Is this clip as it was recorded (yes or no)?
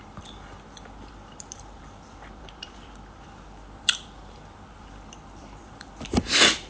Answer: no